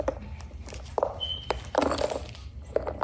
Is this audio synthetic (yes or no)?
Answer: no